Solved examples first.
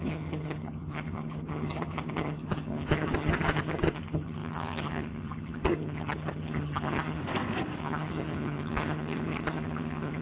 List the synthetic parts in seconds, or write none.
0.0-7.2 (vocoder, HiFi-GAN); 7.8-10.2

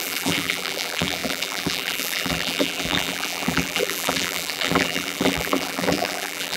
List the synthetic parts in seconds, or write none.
0.0-6.6 (vocoder, BigVGAN v2)

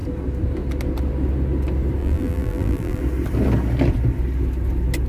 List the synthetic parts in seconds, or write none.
2.0-3.0 (vocoder, BigVGAN v2)

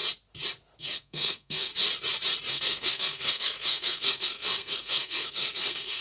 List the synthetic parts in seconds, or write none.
0.8-1.7 (codec, SNAC); 2.5-6.0

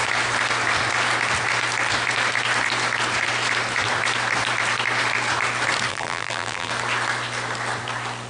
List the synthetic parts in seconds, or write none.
5.9-6.7 (vocoder, BigVGAN v2)